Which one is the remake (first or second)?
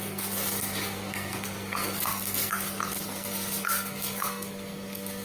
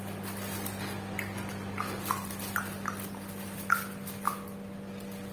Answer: first